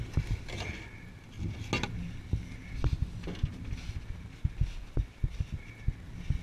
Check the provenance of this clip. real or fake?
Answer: real